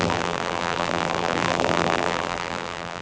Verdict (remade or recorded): remade